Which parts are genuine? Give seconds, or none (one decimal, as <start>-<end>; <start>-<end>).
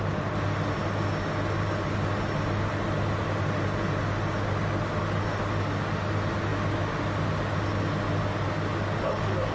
0.0-9.5